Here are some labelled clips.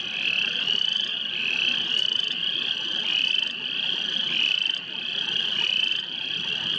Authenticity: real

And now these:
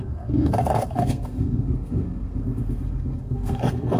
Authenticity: fake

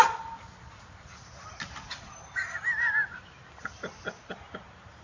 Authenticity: real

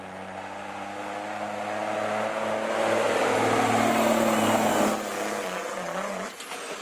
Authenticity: real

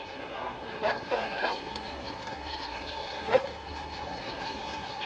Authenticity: fake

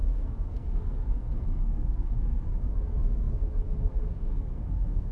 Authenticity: fake